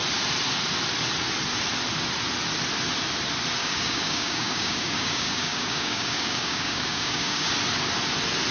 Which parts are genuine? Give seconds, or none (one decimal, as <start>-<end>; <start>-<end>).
0.0-3.6; 7.5-8.5